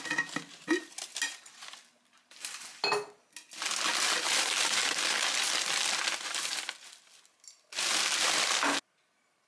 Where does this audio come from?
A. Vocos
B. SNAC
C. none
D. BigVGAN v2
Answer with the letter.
C